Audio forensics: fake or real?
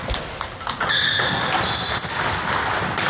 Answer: real